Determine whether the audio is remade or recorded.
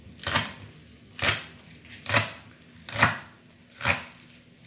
remade